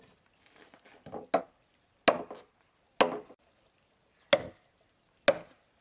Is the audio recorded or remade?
recorded